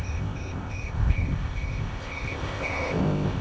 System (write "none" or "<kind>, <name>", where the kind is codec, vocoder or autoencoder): codec, ZipCodec